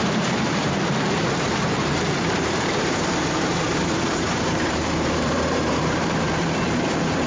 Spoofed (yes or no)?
yes